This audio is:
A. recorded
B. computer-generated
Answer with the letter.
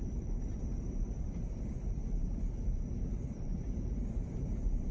B